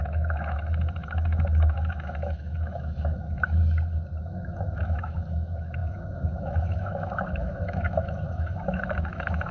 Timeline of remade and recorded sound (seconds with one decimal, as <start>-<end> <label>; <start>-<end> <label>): 0.0-3.6 remade; 3.6-4.2 recorded; 4.2-9.5 remade